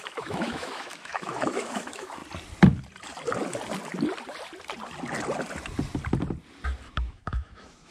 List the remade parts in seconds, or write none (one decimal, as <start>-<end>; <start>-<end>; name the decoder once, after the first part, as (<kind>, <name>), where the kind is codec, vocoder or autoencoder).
0.0-2.2 (autoencoder, DAC-VAE); 6.9-7.9